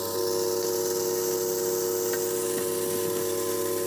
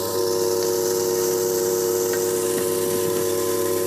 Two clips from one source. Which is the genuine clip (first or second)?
first